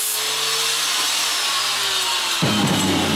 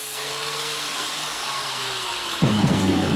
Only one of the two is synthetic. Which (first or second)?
second